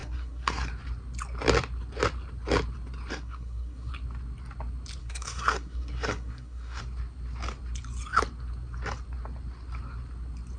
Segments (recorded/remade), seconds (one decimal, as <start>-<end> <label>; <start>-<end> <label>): 0.0-0.7 remade; 0.7-3.1 recorded; 3.1-3.9 remade; 3.9-5.0 recorded; 5.0-6.8 remade; 6.8-10.6 recorded